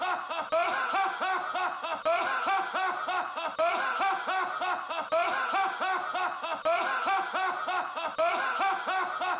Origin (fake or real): real